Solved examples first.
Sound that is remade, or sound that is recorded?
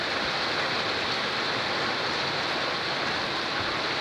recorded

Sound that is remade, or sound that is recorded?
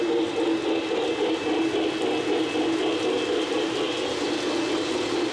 recorded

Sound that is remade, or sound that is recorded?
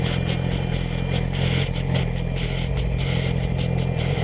recorded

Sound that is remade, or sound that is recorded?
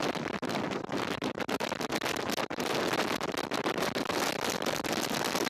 recorded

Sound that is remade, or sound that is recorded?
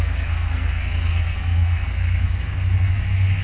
remade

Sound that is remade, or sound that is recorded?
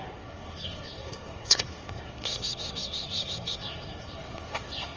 remade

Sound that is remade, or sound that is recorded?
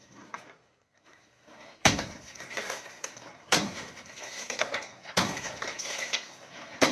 remade